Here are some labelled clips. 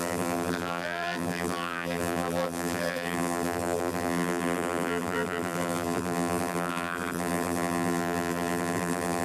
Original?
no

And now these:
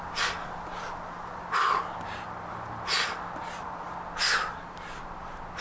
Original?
yes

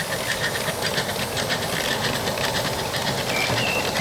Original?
yes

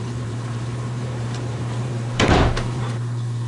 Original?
no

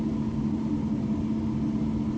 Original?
yes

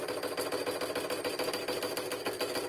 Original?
yes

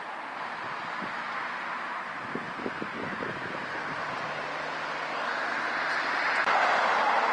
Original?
yes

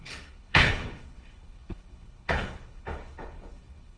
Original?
no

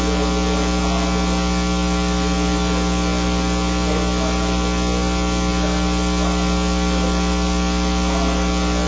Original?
yes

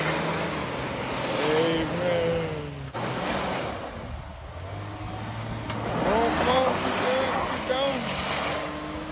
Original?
yes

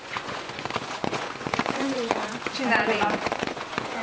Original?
no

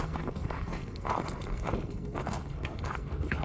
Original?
no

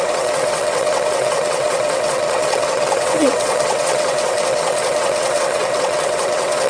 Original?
no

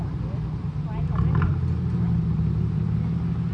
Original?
yes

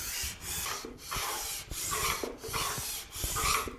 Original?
yes